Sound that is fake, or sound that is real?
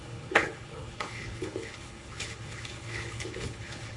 fake